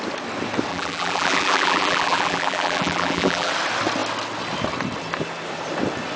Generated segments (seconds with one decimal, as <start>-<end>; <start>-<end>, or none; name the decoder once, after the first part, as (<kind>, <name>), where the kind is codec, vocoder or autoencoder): 0.7-3.5 (vocoder, BigVGAN v2)